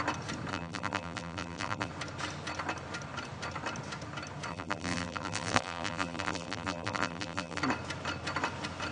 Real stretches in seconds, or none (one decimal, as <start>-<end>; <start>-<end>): 0.0-0.5; 1.9-4.5; 7.6-8.9